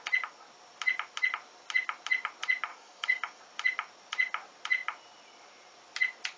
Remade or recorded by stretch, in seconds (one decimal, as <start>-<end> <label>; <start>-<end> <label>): 0.0-2.7 recorded; 2.7-3.4 remade; 3.4-6.4 recorded

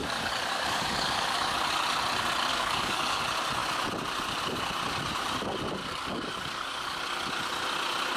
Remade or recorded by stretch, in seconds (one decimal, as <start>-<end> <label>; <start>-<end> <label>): 0.0-1.7 remade; 1.7-2.5 recorded; 2.5-3.2 remade; 3.2-5.8 recorded; 5.8-7.0 remade; 7.0-8.2 recorded

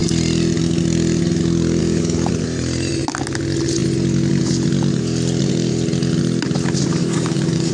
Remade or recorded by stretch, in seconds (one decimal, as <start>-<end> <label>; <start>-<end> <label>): 0.0-1.8 recorded; 1.8-2.3 remade; 2.3-7.0 recorded; 7.0-7.7 remade

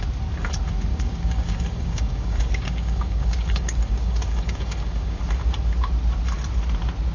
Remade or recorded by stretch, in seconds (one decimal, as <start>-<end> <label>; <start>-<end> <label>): 0.0-0.9 recorded; 0.9-5.2 remade; 5.2-7.1 recorded